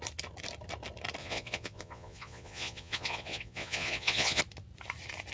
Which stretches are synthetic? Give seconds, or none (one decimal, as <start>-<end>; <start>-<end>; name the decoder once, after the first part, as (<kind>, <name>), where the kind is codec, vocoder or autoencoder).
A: 1.2-4.4 (vocoder, Vocos)